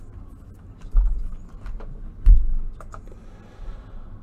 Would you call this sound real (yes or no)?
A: yes